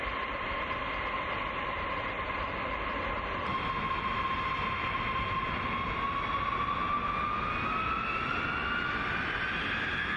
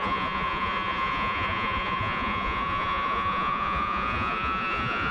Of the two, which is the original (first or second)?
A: first